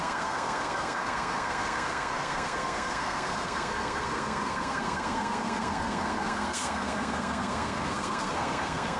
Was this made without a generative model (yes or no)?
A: no